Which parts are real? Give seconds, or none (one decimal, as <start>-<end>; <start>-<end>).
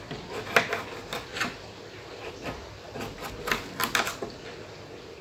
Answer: 0.0-1.3; 4.4-5.2